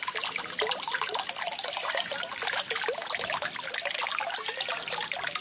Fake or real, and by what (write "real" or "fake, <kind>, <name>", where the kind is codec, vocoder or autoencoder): real